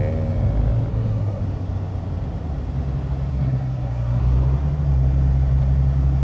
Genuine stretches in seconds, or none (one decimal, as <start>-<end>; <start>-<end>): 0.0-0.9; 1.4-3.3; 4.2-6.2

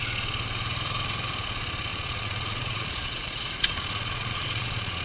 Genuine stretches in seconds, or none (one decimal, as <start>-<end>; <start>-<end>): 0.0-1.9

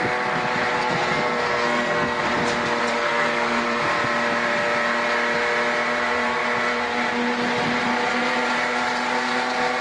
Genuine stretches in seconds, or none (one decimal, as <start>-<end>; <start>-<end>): 0.0-0.8; 2.2-3.0; 3.8-9.8

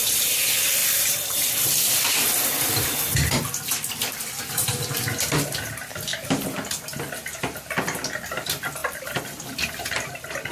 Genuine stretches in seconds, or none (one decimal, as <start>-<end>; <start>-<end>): 0.0-0.8; 4.5-8.8; 9.5-10.5

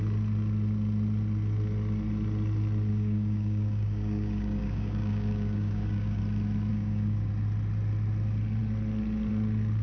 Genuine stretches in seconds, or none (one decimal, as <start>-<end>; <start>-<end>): 0.0-2.9; 6.2-6.7; 7.3-9.8

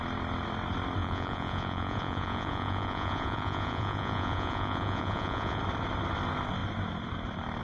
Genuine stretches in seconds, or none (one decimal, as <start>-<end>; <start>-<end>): 0.0-1.0; 5.6-7.6

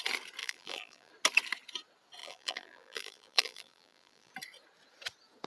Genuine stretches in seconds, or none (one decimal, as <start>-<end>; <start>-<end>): 0.0-0.4; 1.1-2.2; 4.3-5.5